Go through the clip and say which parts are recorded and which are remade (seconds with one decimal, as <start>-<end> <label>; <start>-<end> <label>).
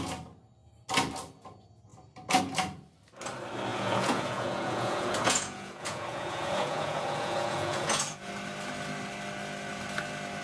0.0-3.7 recorded; 3.7-8.3 remade; 8.3-10.4 recorded